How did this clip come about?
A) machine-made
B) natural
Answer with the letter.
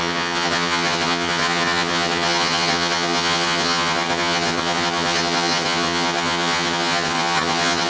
A